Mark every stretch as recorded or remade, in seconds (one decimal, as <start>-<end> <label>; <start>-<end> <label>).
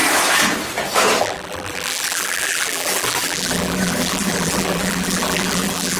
0.0-1.2 recorded; 1.2-6.0 remade